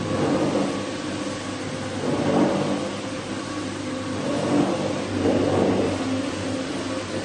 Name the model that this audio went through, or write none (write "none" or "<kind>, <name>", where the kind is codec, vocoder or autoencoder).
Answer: none